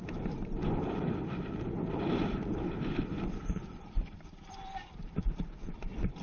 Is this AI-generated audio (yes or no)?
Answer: yes